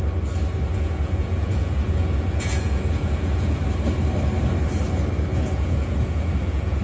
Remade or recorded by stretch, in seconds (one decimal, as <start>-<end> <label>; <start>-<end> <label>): 0.0-0.7 recorded; 0.7-3.6 remade; 3.6-5.3 recorded; 5.3-6.8 remade